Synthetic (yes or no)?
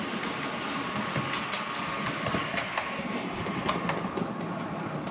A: no